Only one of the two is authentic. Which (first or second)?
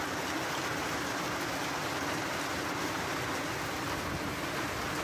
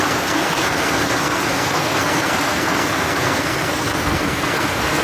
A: first